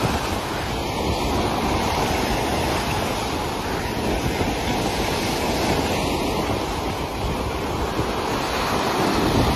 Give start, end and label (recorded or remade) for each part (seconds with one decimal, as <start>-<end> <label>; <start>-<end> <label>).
0.0-9.6 recorded